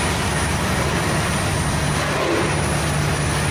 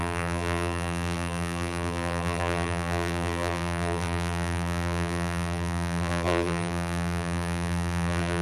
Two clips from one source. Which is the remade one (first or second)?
second